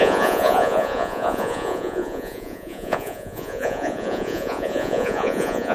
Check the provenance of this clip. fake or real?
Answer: fake